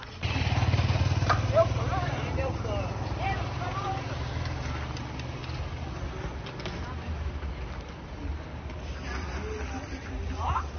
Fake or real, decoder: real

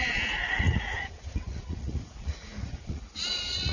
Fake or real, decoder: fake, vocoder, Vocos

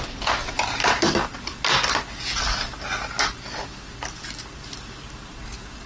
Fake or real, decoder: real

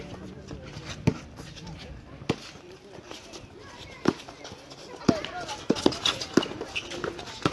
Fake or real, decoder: real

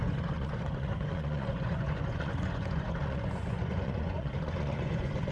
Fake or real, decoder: fake, vocoder, Vocos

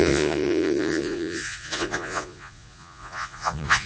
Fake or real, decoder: fake, vocoder, Vocos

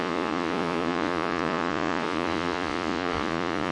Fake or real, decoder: fake, vocoder, Vocos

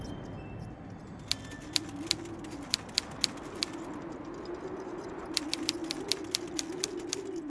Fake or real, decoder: real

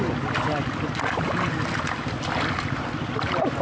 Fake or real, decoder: real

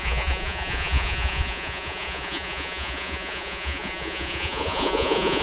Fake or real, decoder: fake, vocoder, Vocos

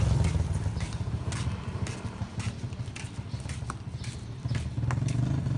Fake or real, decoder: real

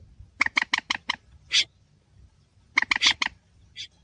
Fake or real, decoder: real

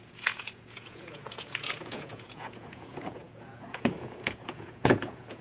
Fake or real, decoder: fake, vocoder, Vocos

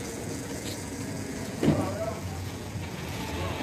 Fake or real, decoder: fake, vocoder, Vocos